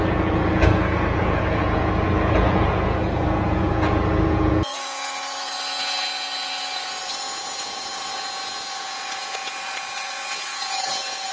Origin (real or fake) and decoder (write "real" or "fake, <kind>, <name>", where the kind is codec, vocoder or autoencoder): fake, vocoder, Vocos